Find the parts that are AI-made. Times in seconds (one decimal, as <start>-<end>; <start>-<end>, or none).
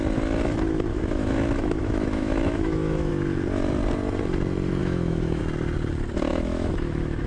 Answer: 0.9-3.1; 4.8-5.4; 6.3-7.3